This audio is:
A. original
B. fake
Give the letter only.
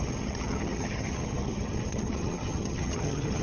B